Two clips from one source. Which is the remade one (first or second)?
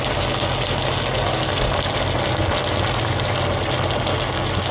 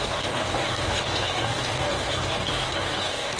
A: second